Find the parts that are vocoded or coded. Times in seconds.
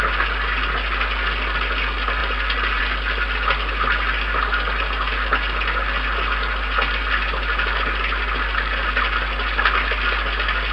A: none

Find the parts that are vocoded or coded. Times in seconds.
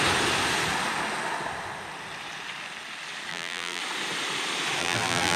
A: 3.3-3.8 (vocoder, BigVGAN v2); 4.8-5.4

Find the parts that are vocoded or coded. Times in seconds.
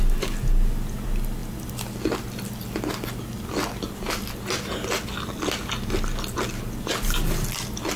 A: none